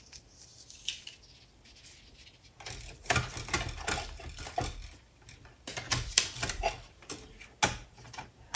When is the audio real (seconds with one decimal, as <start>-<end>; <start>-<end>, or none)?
0.0-5.9; 6.6-8.6